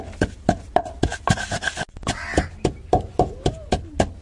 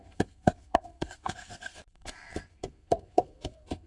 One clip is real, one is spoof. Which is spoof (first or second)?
second